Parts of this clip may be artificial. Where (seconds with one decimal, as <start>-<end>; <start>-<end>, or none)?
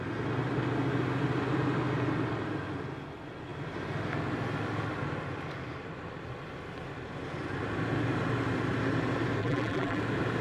9.4-10.0